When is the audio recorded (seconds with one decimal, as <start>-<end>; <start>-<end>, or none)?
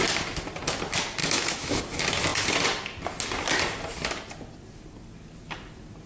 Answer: 0.0-1.2; 1.8-6.1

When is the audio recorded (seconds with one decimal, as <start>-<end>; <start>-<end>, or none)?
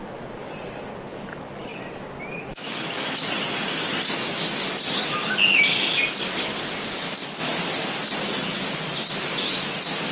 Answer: 0.0-10.1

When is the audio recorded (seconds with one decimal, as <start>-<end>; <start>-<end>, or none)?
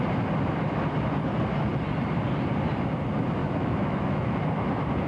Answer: 0.0-3.4; 4.4-5.1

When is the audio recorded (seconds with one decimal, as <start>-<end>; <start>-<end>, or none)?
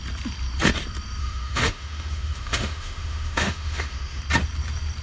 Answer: 0.0-1.2; 4.2-5.0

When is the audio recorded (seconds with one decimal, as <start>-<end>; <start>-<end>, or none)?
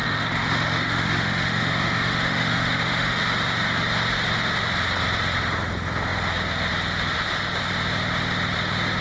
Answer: 3.2-9.0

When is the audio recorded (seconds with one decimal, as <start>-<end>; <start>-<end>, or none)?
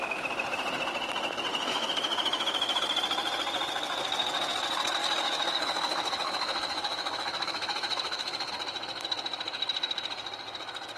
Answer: 0.0-1.5; 2.8-5.0; 8.5-11.0